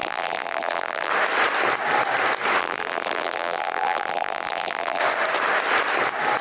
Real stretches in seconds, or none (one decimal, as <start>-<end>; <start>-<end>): 1.1-2.6; 5.0-6.4

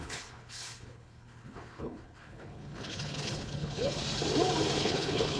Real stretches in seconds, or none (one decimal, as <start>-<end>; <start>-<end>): 4.0-4.8